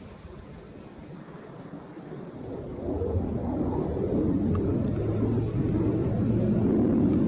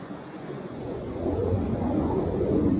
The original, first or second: first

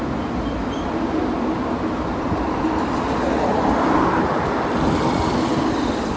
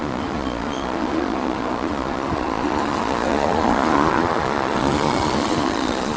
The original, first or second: first